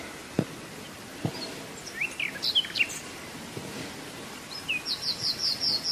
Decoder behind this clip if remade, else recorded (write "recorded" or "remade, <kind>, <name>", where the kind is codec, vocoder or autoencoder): recorded